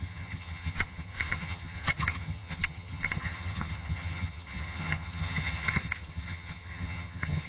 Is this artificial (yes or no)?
yes